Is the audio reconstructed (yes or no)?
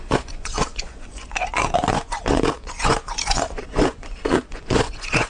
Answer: yes